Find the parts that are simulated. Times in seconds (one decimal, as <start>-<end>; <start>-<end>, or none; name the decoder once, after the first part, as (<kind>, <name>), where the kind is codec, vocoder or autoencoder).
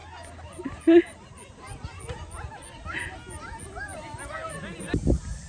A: none